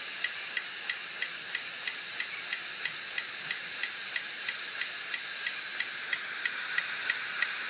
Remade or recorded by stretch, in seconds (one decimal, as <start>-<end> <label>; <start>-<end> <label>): 0.0-7.7 recorded